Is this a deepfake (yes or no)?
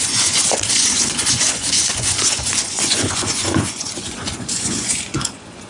yes